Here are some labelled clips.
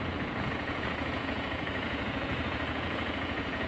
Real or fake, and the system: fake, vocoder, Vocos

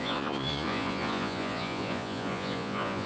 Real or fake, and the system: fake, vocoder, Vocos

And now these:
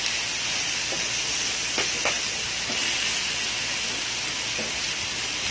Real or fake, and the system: real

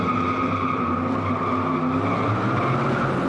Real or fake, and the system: real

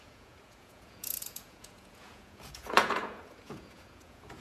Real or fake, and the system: fake, vocoder, Vocos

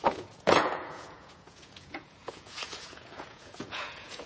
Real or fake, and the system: fake, vocoder, Vocos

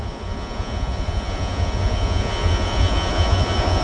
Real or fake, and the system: fake, vocoder, Vocos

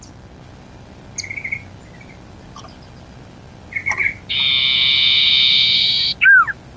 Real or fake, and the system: real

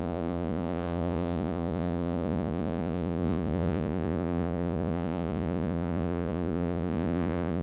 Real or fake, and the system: fake, vocoder, Vocos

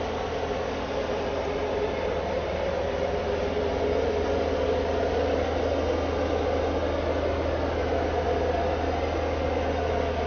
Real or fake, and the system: real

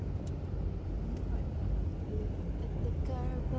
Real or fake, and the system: real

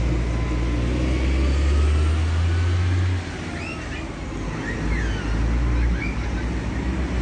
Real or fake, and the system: real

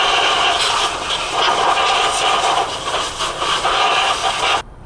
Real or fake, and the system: real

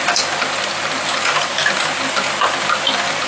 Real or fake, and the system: real